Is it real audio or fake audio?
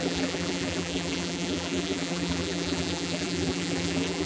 fake